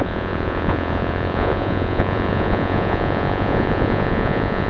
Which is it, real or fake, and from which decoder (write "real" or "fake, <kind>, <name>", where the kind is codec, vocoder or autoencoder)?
fake, vocoder, Vocos